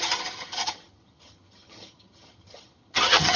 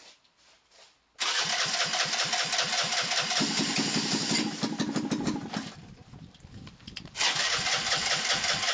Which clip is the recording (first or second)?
second